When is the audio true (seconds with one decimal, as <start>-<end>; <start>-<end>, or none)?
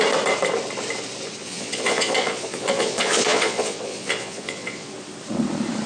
0.0-1.4; 4.9-5.9